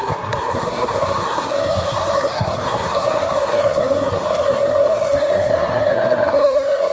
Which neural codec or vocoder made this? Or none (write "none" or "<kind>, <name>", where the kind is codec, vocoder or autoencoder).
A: codec, SNAC